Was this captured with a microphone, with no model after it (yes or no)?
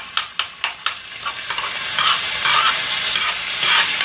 yes